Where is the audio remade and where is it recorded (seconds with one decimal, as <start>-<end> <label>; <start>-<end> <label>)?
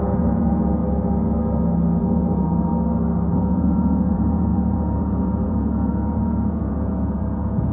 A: 0.0-0.8 remade; 0.8-2.0 recorded; 2.0-2.7 remade; 2.7-3.3 recorded; 3.3-7.7 remade